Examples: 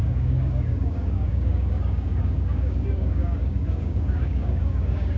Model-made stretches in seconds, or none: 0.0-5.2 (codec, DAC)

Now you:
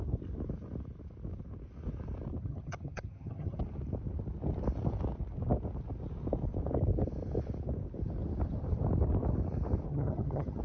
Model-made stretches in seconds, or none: 2.4-3.6 (vocoder, HiFi-GAN); 9.9-10.6